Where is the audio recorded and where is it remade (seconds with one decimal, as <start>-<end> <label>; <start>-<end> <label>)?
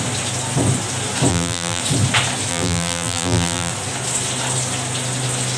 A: 0.0-1.3 recorded; 1.3-1.8 remade; 1.8-2.5 recorded; 2.5-3.7 remade; 3.7-5.6 recorded